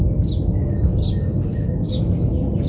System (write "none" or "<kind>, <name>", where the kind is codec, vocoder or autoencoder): none